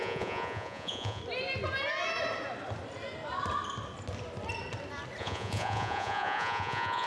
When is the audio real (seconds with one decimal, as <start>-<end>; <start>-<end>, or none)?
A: 1.2-5.2